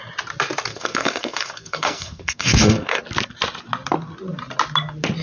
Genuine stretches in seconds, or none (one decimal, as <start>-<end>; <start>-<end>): 0.0-0.7; 3.0-5.2